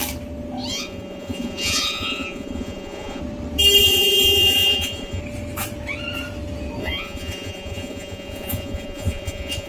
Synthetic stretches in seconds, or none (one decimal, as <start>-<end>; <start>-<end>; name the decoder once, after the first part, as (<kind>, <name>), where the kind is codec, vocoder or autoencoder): 0.7-3.2 (vocoder, Vocos); 3.8-5.2; 6.8-9.7